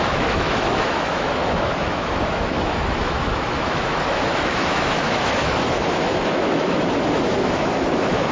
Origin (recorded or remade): remade